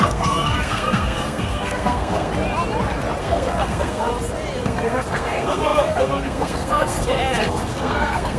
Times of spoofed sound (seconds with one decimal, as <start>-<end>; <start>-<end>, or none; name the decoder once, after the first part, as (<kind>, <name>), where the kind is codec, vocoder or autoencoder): 0.0-2.3 (codec, SNAC); 3.2-4.1; 4.6-8.4